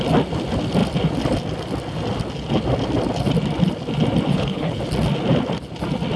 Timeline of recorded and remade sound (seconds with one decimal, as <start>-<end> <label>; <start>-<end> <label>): 0.0-4.3 recorded; 4.3-4.8 remade; 4.8-6.2 recorded